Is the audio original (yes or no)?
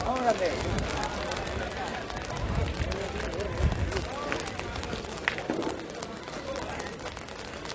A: yes